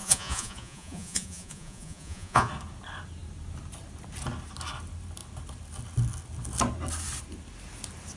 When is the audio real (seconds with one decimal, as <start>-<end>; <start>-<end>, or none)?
2.5-8.2